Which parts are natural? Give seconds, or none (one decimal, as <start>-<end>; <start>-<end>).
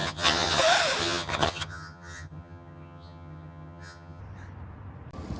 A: 0.6-1.0; 4.2-5.4